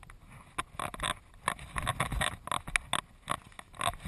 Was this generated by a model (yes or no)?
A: no